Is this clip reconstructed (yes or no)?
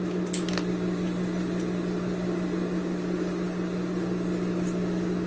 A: no